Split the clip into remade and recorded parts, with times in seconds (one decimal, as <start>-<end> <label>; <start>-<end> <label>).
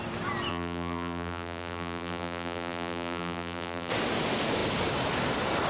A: 0.0-0.5 recorded; 0.5-3.9 remade; 3.9-5.7 recorded